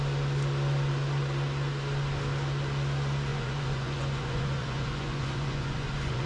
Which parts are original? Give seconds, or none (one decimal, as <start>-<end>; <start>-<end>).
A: 0.0-3.3